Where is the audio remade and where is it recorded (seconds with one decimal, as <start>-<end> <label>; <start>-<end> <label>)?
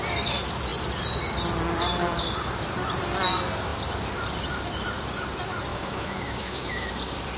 0.0-5.7 recorded; 5.7-6.9 remade; 6.9-7.4 recorded